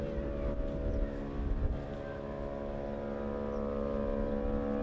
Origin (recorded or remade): recorded